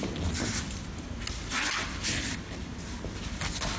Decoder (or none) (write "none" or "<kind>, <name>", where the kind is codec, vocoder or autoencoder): none